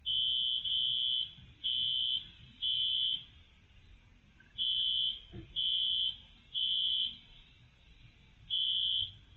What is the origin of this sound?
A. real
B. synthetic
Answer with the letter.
A